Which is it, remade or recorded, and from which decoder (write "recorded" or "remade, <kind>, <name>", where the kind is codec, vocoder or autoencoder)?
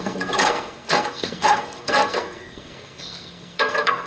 remade, codec, SNAC